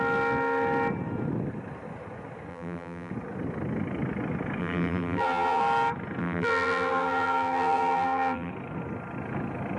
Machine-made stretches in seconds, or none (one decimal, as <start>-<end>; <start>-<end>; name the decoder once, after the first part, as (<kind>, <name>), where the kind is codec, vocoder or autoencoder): 2.5-3.1 (vocoder, BigVGAN v2); 4.6-5.6; 6.2-8.5